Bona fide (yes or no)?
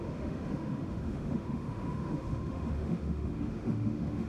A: no